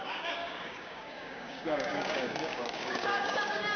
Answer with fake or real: fake